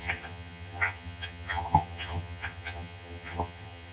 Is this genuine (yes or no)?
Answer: no